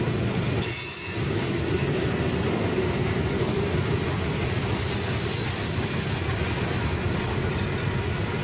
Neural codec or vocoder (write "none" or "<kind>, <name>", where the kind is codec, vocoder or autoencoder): none